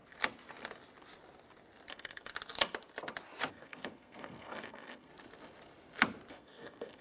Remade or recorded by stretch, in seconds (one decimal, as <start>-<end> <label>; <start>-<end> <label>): 0.0-1.9 recorded; 1.9-2.3 remade; 2.3-3.5 recorded; 3.5-5.1 remade; 5.1-6.3 recorded; 6.3-7.0 remade